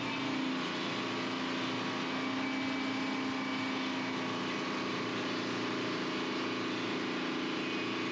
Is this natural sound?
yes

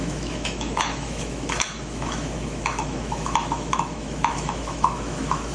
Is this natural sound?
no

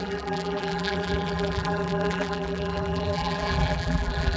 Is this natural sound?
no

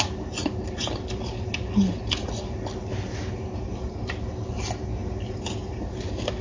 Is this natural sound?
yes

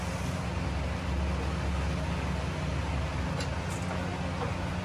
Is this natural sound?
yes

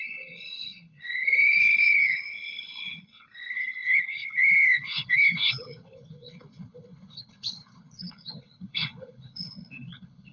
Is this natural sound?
no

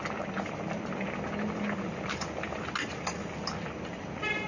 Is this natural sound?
yes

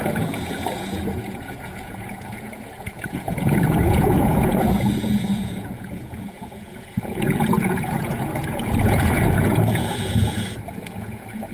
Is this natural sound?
no